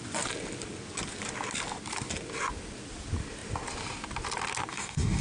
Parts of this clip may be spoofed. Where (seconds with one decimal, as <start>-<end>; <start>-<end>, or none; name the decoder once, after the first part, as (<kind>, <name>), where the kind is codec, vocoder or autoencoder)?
4.7-5.2 (codec, DAC)